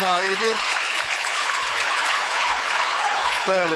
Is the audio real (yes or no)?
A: no